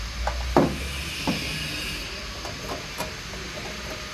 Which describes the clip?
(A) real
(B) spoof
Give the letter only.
A